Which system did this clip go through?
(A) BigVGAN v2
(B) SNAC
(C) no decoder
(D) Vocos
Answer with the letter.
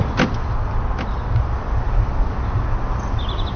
C